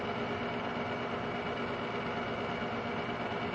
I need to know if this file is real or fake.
real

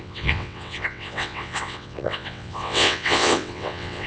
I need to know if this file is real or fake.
fake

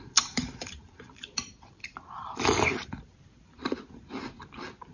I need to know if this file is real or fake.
fake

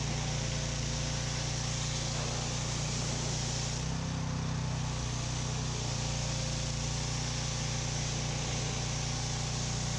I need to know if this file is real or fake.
real